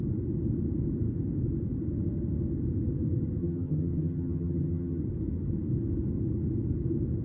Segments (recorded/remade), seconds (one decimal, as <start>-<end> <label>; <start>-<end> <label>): 0.0-3.4 recorded; 3.4-5.0 remade; 5.0-7.2 recorded